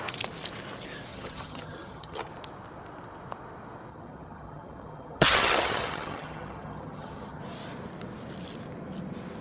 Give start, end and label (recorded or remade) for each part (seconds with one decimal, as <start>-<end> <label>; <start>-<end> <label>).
0.0-1.1 recorded; 1.1-2.3 remade; 2.3-3.9 recorded; 3.9-7.4 remade; 7.4-9.4 recorded